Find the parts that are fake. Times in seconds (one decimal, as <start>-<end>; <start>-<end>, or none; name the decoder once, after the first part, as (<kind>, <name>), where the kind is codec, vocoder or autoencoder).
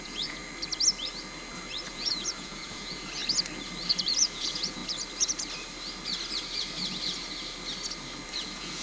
0.0-0.4 (vocoder, Vocos); 1.9-3.2; 3.9-4.8; 8.3-8.8